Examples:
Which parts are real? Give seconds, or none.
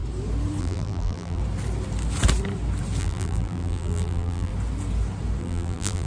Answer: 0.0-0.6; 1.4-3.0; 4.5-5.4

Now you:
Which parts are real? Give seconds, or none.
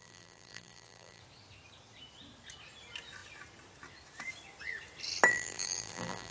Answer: 1.2-5.3